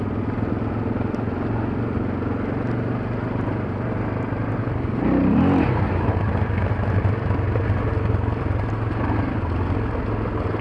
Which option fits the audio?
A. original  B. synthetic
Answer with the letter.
A